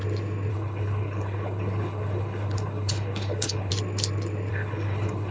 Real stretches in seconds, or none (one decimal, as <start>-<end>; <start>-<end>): 0.0-0.5; 3.7-4.5